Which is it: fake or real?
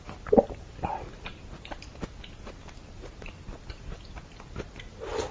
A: real